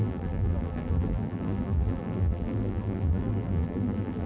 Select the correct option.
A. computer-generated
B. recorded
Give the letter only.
A